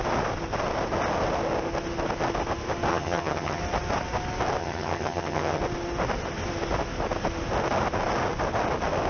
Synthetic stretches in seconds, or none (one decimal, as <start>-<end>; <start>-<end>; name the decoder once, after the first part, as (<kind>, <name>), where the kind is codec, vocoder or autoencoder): 2.9-3.6 (vocoder, HiFi-GAN); 4.6-5.6